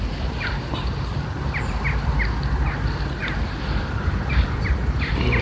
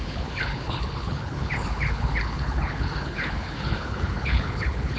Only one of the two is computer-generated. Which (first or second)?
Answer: second